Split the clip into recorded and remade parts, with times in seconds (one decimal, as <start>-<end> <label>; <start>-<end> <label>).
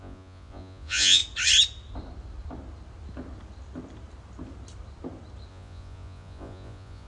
0.0-1.2 remade; 1.2-5.5 recorded; 5.5-7.1 remade